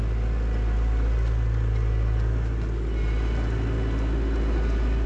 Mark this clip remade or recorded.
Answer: recorded